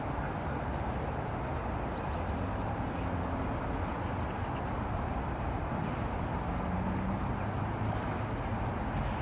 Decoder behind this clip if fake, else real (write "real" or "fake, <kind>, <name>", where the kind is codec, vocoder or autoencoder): real